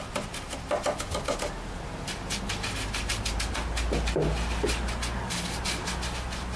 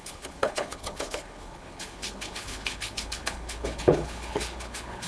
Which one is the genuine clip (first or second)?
first